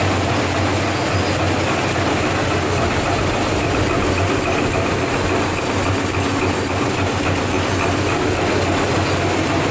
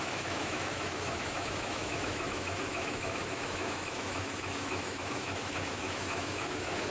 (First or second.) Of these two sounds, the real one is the first